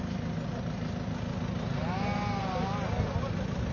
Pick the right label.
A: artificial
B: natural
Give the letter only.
B